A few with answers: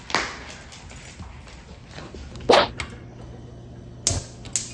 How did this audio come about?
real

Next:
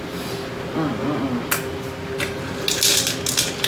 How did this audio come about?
real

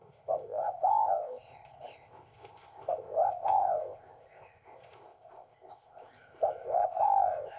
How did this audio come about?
fake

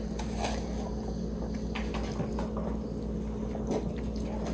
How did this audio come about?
real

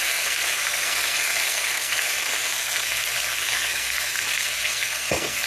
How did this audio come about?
fake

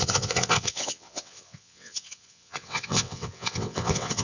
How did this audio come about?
fake